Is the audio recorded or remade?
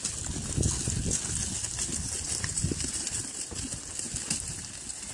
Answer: recorded